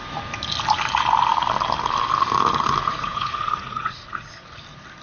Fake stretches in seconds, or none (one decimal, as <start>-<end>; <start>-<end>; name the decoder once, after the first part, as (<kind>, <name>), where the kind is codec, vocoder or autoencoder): 2.8-4.2 (vocoder, Vocos)